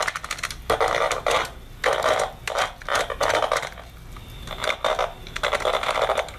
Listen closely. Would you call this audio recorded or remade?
recorded